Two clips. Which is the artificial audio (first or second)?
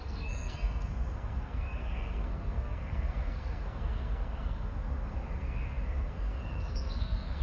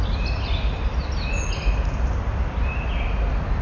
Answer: first